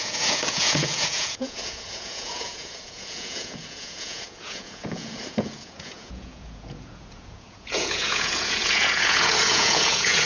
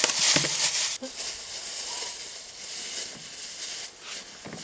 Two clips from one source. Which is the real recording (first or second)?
second